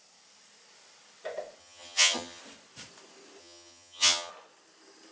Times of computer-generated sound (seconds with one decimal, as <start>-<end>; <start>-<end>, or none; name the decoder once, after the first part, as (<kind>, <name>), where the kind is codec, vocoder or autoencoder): 1.6-2.4 (vocoder, HiFi-GAN); 3.4-4.3